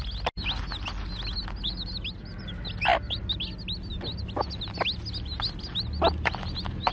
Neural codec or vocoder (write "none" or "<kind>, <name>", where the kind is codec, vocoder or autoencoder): none